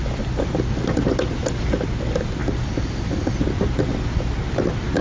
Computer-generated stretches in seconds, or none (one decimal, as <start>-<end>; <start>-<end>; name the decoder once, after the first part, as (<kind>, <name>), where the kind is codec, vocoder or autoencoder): none

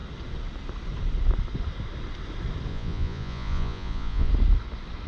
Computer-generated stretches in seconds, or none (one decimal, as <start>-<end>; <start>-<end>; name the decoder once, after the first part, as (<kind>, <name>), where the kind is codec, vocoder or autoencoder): 2.7-4.3 (vocoder, Vocos)

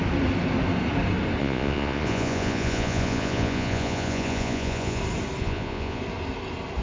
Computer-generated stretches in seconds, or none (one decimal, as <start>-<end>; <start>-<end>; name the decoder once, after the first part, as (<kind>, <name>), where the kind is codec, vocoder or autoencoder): 1.4-5.0 (vocoder, Vocos); 5.4-6.0

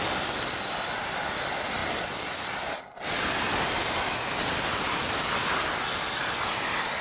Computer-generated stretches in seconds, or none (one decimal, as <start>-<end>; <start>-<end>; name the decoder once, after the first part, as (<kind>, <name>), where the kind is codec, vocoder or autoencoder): none

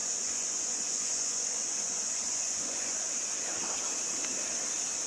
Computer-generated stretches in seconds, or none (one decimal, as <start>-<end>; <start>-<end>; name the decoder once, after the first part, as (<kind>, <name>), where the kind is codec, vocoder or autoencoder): 0.0-3.1 (vocoder, Vocos)

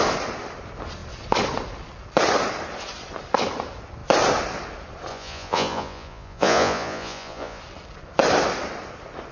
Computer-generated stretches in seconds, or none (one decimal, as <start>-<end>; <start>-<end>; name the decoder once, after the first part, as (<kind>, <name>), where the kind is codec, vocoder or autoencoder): 5.1-7.6 (vocoder, Vocos)